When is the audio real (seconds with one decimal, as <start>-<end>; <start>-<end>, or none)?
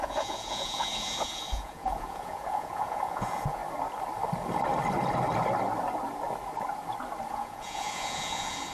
3.6-7.3